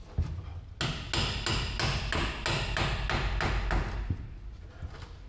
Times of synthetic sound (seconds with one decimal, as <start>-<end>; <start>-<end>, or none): none